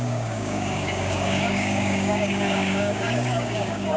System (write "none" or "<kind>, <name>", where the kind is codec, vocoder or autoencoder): codec, DAC